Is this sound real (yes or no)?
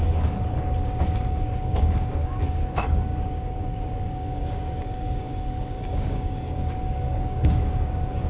no